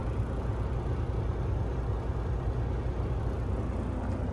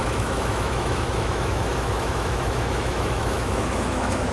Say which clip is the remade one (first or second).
second